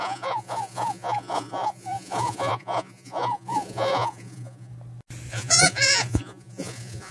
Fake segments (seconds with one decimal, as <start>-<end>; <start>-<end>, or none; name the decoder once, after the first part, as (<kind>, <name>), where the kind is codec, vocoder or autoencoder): 0.0-4.7 (vocoder, Vocos); 5.3-7.1